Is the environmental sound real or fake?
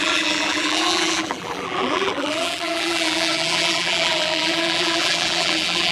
fake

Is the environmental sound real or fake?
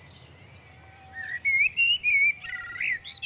fake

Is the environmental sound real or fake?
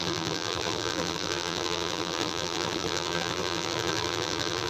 fake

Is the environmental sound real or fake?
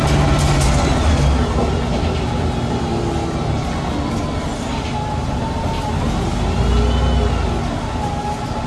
real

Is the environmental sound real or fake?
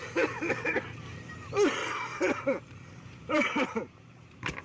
fake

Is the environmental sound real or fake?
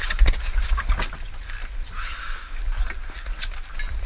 real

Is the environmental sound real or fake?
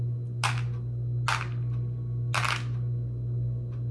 real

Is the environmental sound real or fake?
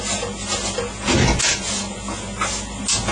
real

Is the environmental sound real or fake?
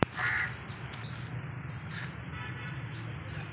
real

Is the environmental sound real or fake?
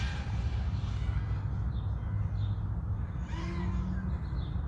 real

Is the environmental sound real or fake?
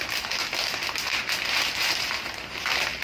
real